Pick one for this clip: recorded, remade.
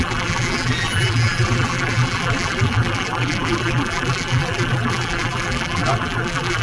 remade